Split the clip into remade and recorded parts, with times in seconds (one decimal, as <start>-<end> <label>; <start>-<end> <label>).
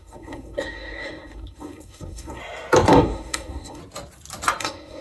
0.0-2.4 remade; 2.4-2.9 recorded; 2.9-3.8 remade; 3.8-4.6 recorded; 4.6-5.0 remade